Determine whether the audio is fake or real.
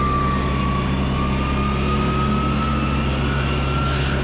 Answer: real